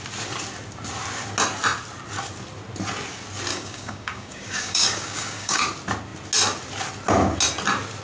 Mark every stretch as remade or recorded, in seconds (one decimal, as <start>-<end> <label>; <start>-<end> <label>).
0.0-3.5 recorded; 3.5-5.6 remade; 5.6-8.0 recorded